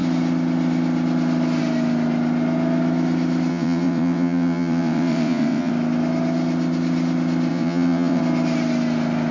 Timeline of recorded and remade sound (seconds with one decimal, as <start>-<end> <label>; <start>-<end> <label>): 0.0-3.5 recorded; 3.5-5.7 remade; 5.7-7.5 recorded; 7.5-8.2 remade; 8.2-9.3 recorded